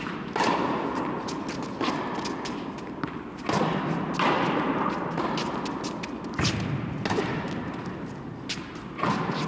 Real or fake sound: real